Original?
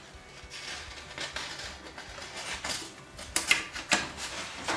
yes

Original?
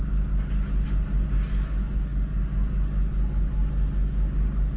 yes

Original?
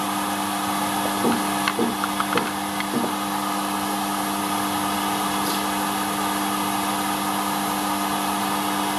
yes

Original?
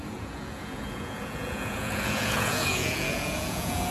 no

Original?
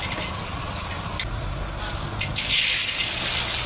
yes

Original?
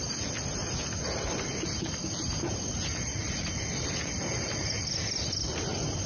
yes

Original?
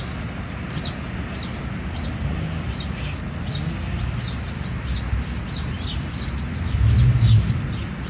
yes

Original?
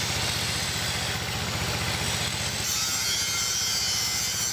yes